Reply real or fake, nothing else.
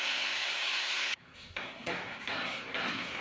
fake